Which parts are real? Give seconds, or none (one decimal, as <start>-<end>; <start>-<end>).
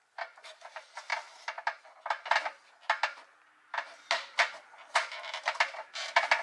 0.0-6.4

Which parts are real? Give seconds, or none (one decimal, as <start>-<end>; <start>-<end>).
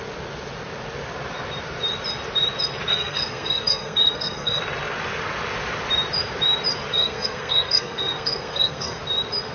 0.0-2.9; 4.6-6.9; 9.0-9.5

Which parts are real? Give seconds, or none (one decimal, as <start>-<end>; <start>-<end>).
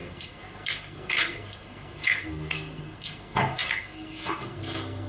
none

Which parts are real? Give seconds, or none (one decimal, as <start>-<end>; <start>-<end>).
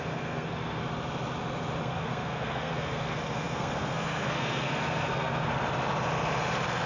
0.8-1.8; 5.5-6.9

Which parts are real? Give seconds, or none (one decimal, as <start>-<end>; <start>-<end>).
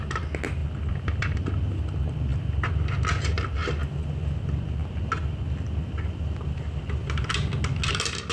0.0-8.3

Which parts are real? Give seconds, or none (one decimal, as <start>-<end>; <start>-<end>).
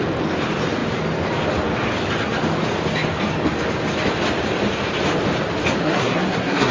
0.0-5.8